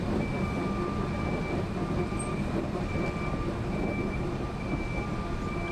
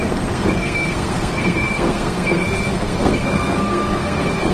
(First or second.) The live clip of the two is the first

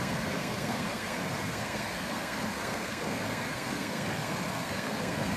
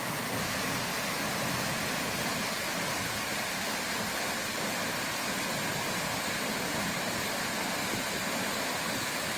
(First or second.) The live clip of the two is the second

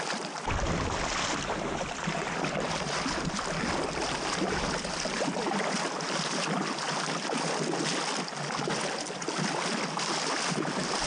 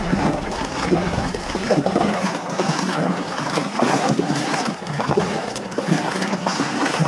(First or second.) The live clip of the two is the first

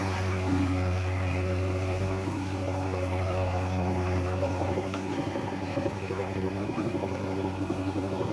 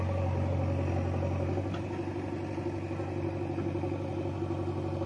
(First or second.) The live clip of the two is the second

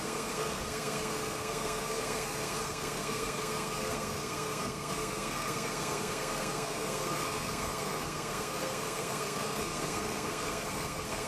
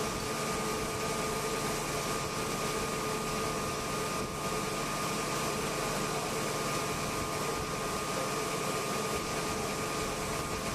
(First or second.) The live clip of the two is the second